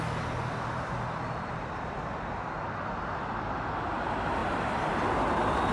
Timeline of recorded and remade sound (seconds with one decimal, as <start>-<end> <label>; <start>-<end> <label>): 0.0-4.4 recorded; 4.4-5.0 remade; 5.0-5.7 recorded